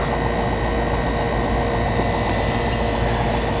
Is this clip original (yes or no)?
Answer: yes